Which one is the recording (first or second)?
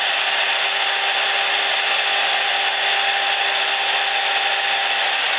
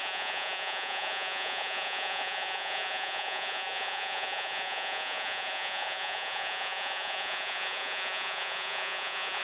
first